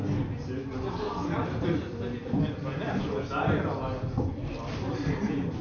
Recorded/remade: recorded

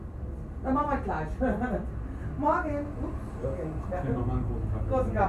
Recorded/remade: recorded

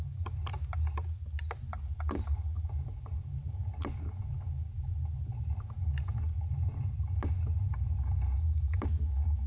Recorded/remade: recorded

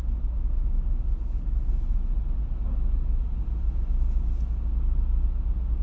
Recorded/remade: recorded